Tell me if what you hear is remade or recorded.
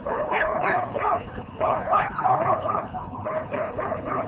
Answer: remade